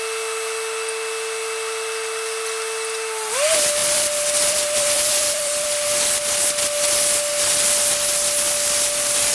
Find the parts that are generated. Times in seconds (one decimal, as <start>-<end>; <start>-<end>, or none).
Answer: 3.8-6.1